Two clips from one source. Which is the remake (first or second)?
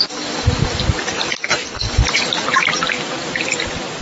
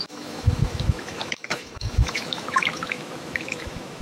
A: second